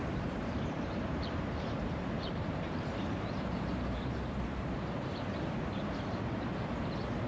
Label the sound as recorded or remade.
remade